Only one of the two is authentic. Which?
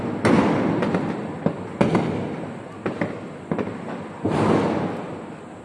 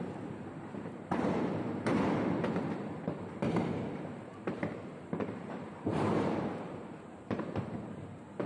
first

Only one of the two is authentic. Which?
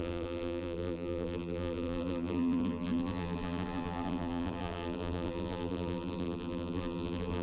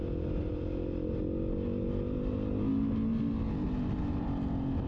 second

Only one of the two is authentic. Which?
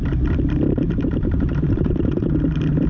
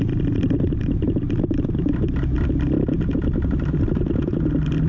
second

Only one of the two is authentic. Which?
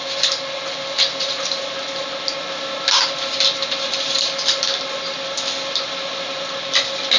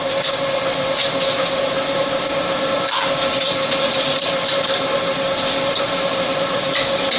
first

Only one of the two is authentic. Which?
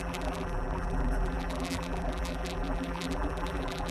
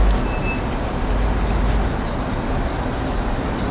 second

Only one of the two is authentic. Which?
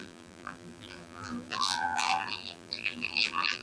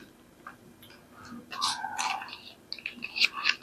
second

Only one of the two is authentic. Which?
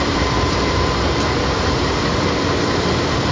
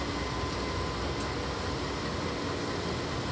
second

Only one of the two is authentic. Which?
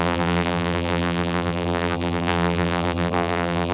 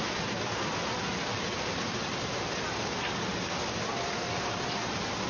second